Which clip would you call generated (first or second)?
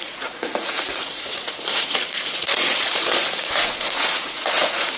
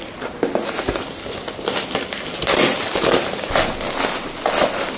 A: first